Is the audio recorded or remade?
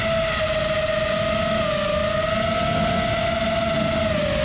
recorded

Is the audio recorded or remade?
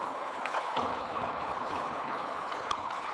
remade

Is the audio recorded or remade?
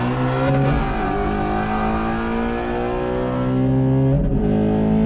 recorded